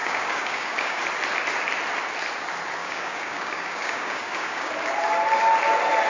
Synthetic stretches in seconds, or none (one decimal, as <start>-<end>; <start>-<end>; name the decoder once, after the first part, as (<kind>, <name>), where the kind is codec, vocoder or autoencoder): 0.0-1.0 (codec, DAC); 2.8-4.7